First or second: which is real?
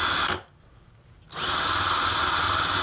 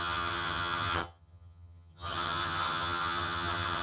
first